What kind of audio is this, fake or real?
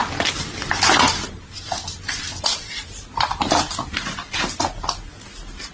real